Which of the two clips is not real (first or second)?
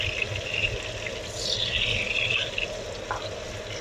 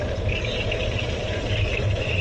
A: second